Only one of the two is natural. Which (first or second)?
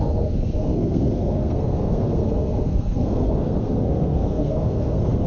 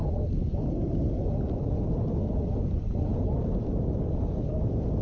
second